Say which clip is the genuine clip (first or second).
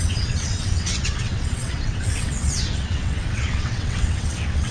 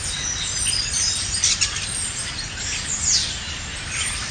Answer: second